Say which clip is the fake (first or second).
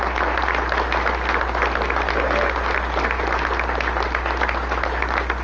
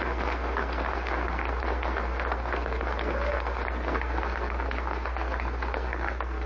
second